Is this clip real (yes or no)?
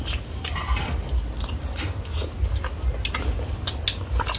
yes